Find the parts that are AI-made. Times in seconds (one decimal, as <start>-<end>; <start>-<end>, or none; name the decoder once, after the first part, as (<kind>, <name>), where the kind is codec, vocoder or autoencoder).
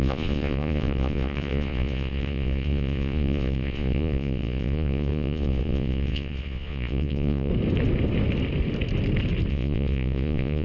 0.0-7.5 (vocoder, Vocos); 9.5-10.6